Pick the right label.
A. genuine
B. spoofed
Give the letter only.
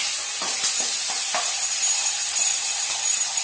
A